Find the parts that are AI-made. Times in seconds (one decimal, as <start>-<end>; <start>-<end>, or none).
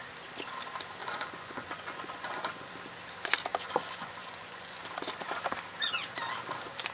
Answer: 1.0-2.7; 3.5-4.8